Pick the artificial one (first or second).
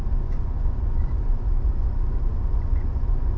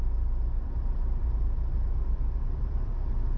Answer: first